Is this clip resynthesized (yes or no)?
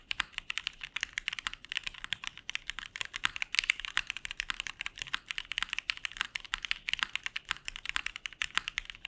yes